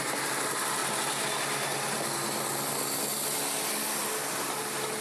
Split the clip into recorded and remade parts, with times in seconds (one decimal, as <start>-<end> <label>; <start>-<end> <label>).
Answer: 0.0-5.0 recorded